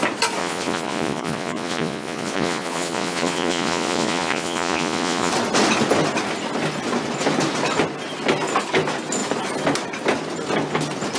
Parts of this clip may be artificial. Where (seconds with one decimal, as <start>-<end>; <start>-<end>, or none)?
0.4-5.3